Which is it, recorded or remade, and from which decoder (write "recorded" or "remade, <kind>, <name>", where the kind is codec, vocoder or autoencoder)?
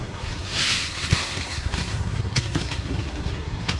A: remade, codec, SNAC